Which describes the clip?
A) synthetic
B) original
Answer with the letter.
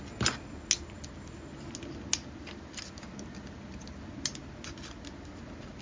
B